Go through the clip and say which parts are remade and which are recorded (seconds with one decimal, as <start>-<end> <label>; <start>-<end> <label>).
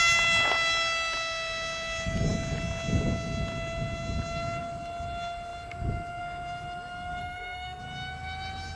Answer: 0.0-7.2 recorded; 7.2-7.8 remade; 7.8-8.8 recorded